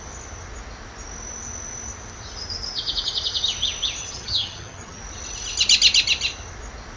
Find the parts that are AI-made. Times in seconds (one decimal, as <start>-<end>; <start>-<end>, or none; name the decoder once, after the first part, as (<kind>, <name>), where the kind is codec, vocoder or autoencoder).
4.0-5.0 (vocoder, HiFi-GAN)